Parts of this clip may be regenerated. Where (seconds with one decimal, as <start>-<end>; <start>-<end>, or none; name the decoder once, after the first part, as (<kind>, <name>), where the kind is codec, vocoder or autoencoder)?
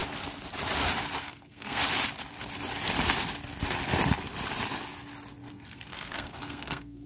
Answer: 1.2-1.8 (codec, SNAC); 5.5-7.1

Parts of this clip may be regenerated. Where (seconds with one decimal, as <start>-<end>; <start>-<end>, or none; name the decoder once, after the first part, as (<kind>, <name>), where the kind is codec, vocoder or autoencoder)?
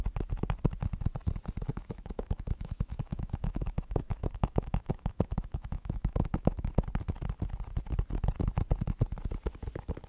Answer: 1.7-6.7 (autoencoder, DAC-VAE)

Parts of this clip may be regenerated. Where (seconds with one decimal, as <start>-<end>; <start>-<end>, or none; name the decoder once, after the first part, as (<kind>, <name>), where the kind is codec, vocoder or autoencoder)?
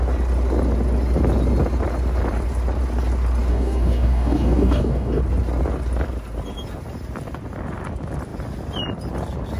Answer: 3.5-5.2 (codec, DAC)